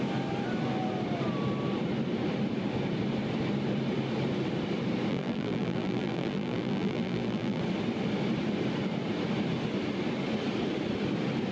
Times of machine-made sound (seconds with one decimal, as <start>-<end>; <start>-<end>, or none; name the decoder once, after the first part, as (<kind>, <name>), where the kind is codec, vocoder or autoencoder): 5.1-7.6 (vocoder, BigVGAN v2)